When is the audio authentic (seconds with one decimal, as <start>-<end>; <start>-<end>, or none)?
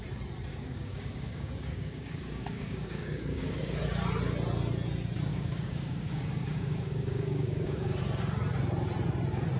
0.0-0.5; 3.8-5.3; 8.0-9.6